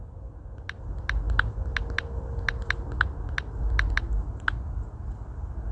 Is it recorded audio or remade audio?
recorded